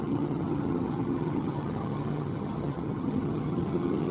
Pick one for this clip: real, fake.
fake